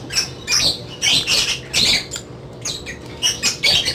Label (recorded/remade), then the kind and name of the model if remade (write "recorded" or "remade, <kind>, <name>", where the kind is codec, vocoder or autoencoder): recorded